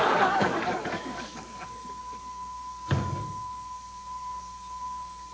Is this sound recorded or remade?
remade